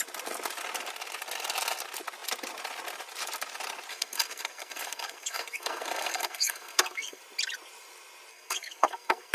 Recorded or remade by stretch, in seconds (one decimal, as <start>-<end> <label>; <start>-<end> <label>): 0.0-3.9 recorded; 3.9-7.2 remade; 7.2-8.3 recorded; 8.3-9.3 remade